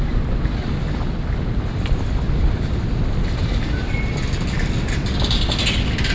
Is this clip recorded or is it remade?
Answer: recorded